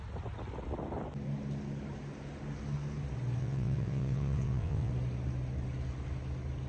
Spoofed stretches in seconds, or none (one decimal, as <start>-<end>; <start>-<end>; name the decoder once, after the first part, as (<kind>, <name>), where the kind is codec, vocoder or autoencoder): 3.4-4.9 (vocoder, WaveNeXt)